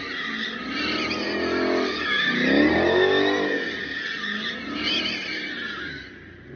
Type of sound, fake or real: real